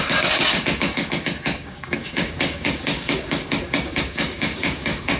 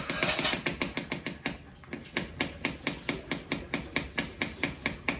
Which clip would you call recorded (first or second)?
second